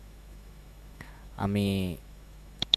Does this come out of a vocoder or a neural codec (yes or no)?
yes